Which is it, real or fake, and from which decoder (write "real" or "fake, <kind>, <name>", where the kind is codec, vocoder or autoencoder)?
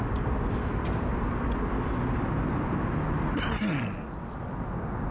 real